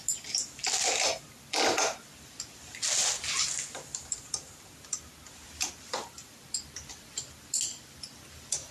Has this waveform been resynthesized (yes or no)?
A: no